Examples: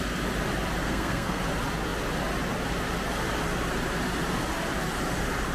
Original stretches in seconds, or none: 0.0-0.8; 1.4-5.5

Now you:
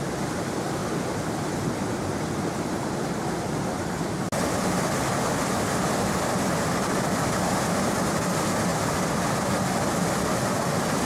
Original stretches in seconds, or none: 0.0-11.0